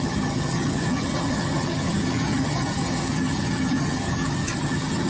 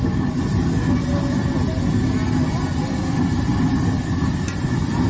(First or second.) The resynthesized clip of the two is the first